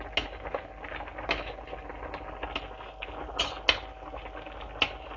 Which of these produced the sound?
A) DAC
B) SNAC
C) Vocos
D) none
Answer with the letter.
D